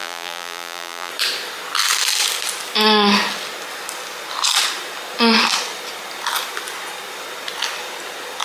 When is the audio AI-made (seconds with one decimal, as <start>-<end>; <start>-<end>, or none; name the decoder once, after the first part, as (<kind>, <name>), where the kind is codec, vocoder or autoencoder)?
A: 0.0-1.1 (vocoder, BigVGAN v2)